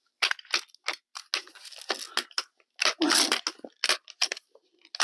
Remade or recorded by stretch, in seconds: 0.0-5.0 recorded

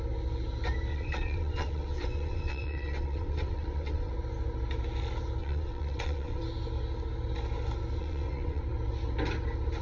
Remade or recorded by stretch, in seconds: 0.0-0.9 recorded; 0.9-4.1 remade; 4.1-5.4 recorded; 5.4-6.4 remade; 6.4-8.0 recorded; 8.0-8.6 remade; 8.6-9.8 recorded

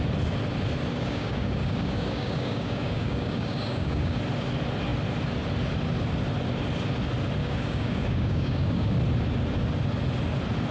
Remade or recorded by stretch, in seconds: 0.0-0.9 recorded; 0.9-4.2 remade; 4.2-7.4 recorded; 7.4-8.9 remade; 8.9-10.7 recorded

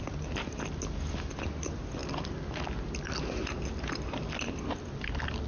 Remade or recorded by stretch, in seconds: 0.0-5.5 recorded

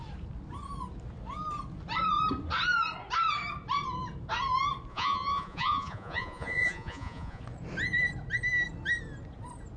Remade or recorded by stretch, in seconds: 0.0-4.9 recorded; 4.9-7.4 remade; 7.4-9.8 recorded

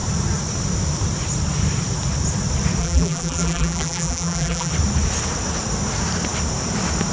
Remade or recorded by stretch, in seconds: 0.0-2.8 recorded; 2.8-4.7 remade; 4.7-7.1 recorded

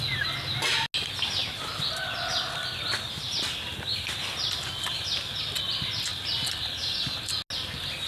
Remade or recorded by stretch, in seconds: 0.0-8.1 recorded